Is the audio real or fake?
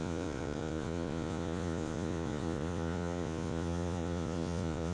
fake